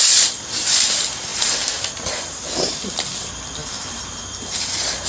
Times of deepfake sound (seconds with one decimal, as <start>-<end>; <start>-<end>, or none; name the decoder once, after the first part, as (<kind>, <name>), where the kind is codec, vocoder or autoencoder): none